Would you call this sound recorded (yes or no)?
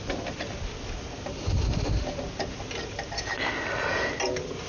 yes